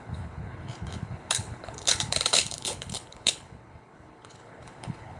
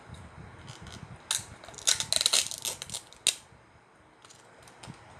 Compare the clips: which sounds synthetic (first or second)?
first